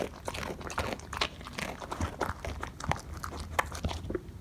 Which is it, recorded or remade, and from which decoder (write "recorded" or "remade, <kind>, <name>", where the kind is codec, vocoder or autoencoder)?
recorded